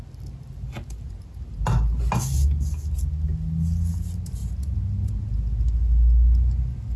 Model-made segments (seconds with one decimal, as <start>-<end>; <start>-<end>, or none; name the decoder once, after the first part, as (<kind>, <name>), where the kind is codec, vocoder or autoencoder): none